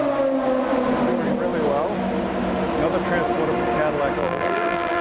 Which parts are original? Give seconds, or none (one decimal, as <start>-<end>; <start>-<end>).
0.0-4.2